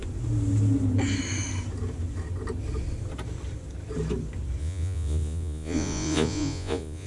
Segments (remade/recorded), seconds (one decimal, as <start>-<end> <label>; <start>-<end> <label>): 0.0-4.6 recorded; 4.6-7.1 remade